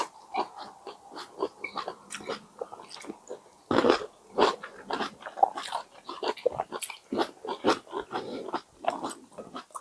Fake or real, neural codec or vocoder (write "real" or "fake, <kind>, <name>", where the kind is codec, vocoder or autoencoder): real